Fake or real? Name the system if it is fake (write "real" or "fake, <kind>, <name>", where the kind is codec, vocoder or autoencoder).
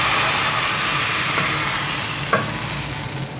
real